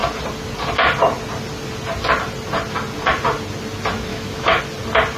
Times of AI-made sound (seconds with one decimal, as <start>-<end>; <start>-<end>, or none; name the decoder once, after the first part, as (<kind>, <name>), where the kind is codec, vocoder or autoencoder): 4.1-4.6 (autoencoder, DAC-VAE)